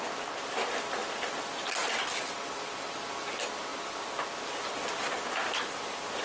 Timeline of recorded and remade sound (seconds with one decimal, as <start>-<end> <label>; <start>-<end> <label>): 0.0-6.2 recorded